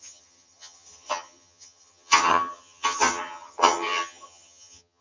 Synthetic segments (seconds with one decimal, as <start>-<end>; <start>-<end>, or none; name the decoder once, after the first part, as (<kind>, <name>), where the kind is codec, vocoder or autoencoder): 0.0-5.0 (vocoder, HiFi-GAN)